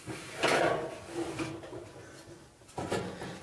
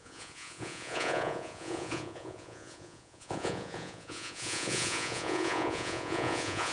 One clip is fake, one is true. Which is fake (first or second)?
second